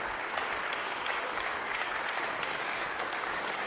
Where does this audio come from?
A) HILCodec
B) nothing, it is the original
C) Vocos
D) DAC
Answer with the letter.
D